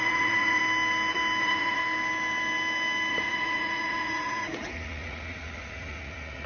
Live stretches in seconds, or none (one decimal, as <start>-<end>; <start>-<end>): 0.6-1.4; 1.8-3.1